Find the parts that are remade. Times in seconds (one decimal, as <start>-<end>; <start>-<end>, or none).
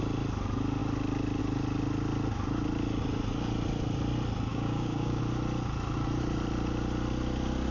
4.5-5.2